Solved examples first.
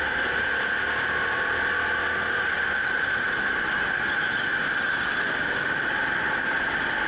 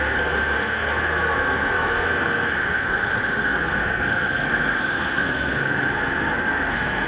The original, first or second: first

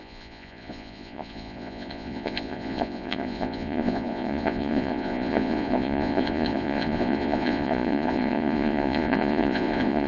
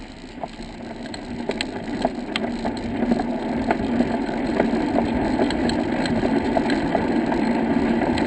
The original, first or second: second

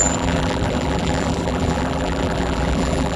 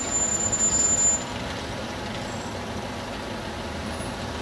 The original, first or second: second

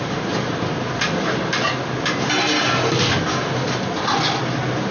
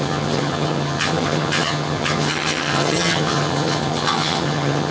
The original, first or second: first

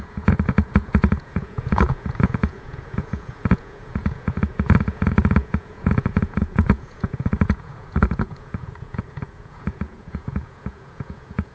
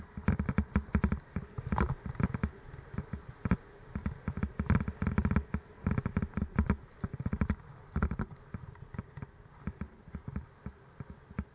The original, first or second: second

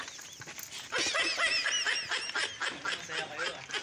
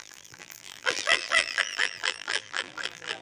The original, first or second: first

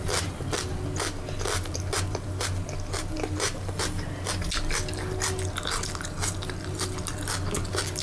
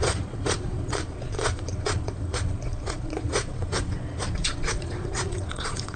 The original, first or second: first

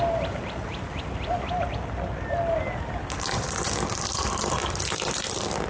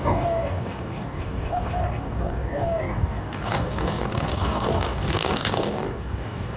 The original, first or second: first